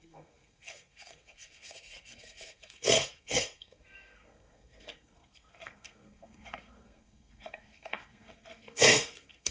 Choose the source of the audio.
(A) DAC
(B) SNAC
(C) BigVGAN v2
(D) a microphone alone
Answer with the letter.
B